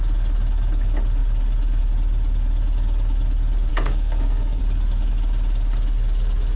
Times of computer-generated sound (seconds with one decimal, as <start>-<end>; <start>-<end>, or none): 3.7-4.6